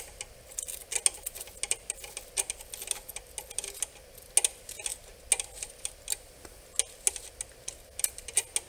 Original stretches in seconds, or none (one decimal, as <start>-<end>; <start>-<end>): 0.0-8.7

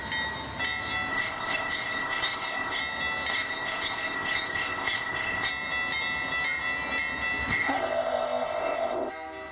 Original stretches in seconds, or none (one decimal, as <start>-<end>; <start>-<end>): 0.0-1.1; 2.8-3.3; 5.5-7.5; 9.1-9.5

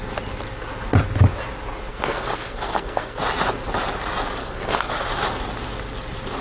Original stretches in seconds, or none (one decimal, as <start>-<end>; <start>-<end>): 0.0-1.9; 3.2-4.4; 4.9-6.4

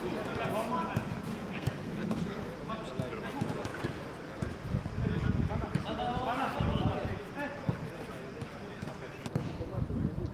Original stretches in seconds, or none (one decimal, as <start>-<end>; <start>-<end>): 0.0-1.3; 2.5-10.3

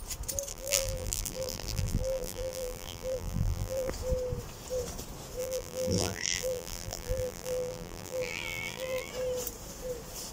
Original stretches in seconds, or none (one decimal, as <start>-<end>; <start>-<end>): 0.0-0.5; 3.9-5.4; 9.1-10.3